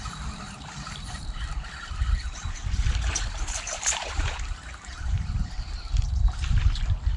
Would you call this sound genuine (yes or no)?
no